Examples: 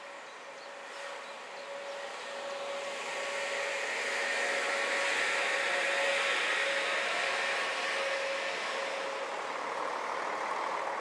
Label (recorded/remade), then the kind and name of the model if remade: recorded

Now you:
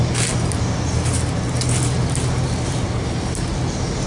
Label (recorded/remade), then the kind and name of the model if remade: recorded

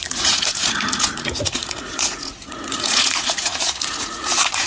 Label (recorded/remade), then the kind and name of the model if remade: remade, vocoder, Vocos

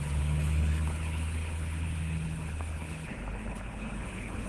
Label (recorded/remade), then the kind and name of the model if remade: remade, codec, HILCodec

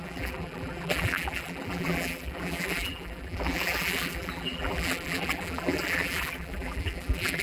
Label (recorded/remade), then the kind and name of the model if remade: remade, vocoder, BigVGAN v2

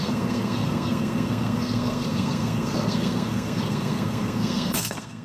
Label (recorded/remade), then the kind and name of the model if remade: remade, codec, SNAC